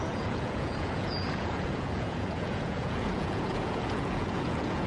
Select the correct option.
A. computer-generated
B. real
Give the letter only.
A